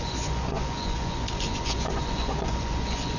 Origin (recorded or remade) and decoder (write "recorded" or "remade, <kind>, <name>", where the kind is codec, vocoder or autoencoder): remade, vocoder, Vocos